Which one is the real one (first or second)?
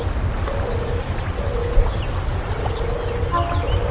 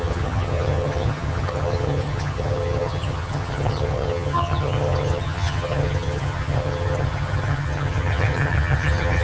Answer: first